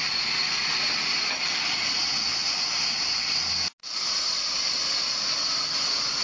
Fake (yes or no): no